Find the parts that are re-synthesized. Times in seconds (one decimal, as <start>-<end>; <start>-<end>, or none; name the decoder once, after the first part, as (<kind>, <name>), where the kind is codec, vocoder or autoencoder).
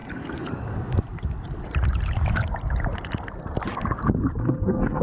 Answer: 4.4-5.0 (codec, SNAC)